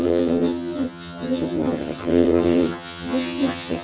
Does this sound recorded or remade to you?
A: remade